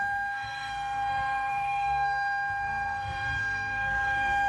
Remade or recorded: remade